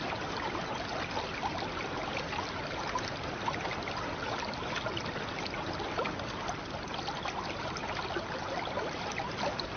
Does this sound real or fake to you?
real